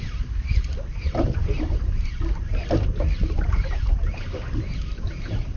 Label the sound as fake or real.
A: real